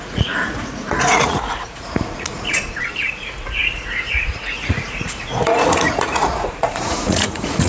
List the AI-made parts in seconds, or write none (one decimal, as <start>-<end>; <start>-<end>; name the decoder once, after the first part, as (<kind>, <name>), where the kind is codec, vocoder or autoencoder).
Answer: 0.0-7.7 (vocoder, Vocos)